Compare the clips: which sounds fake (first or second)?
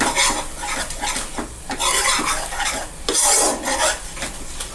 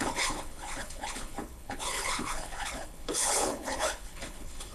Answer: second